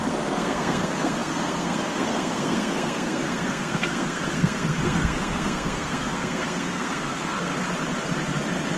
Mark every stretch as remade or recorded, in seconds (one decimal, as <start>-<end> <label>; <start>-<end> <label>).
0.0-7.5 remade; 7.5-8.8 recorded